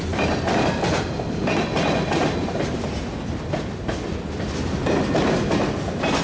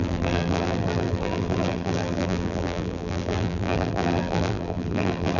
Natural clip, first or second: first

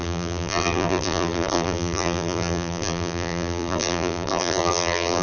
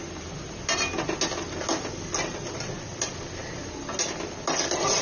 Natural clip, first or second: second